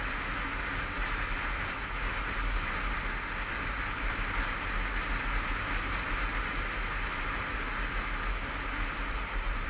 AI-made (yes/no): no